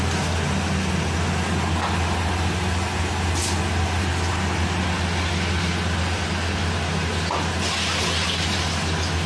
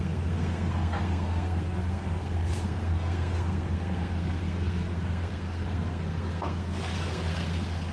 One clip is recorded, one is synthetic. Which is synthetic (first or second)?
second